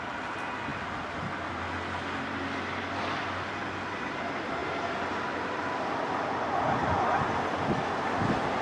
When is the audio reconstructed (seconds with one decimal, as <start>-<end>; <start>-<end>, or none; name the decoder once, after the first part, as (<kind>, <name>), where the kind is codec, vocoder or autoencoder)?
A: 0.7-1.5 (vocoder, BigVGAN v2); 3.0-3.6; 4.6-5.6